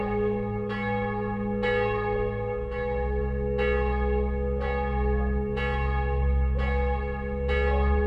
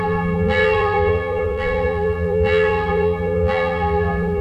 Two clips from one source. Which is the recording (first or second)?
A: first